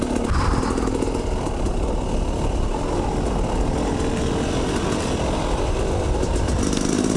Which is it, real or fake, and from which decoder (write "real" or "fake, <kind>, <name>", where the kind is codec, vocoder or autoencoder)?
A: real